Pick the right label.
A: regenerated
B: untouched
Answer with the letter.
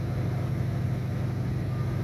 B